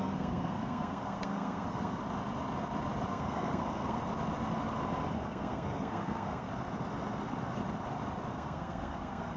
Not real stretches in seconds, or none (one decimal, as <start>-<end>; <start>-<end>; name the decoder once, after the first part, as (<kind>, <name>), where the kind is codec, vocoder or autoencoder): 0.0-2.0 (codec, SNAC); 3.1-4.0; 5.2-6.5; 8.3-9.4